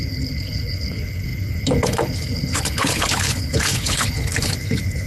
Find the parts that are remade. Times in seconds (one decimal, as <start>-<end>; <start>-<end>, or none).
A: 0.0-5.1